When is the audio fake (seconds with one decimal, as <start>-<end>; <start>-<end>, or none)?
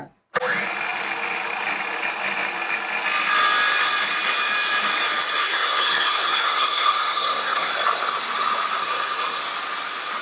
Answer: 5.4-7.7; 8.8-9.4